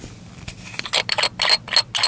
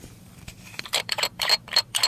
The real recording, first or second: first